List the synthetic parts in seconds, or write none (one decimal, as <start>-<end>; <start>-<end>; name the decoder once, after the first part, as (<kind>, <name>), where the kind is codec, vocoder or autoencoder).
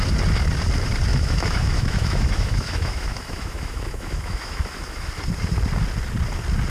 1.1-5.1 (autoencoder, DAC-VAE)